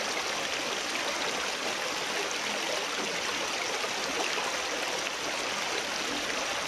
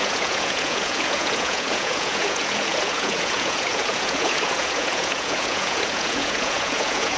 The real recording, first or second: first